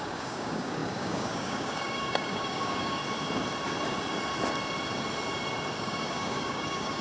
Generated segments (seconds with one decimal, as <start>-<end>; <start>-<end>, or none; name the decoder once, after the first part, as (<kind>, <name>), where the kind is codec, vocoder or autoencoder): 0.0-3.0 (codec, DAC); 5.8-7.0